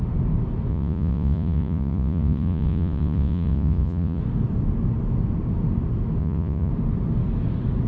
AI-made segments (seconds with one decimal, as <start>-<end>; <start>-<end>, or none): 0.7-4.2; 6.2-6.7